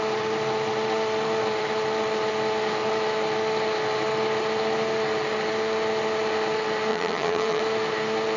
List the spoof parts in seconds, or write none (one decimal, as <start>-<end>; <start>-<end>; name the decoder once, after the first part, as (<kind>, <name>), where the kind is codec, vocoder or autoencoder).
6.9-7.6 (vocoder, HiFi-GAN)